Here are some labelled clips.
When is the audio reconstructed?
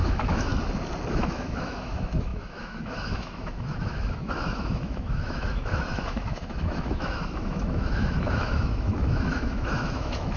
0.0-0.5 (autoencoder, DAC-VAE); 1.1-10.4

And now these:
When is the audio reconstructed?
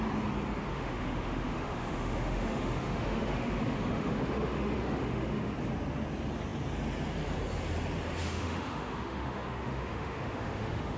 0.7-5.5 (autoencoder, DAC-VAE); 8.2-11.0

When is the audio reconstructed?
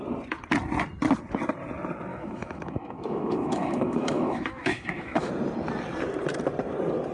2.1-5.3 (autoencoder, DAC-VAE)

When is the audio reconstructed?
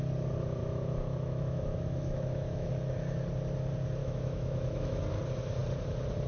0.6-2.7 (autoencoder, DAC-VAE); 4.0-5.0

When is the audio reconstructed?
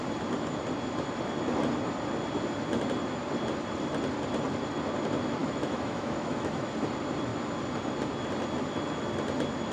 5.4-6.7 (autoencoder, DAC-VAE)